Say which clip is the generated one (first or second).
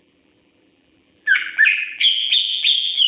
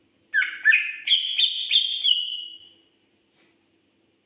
first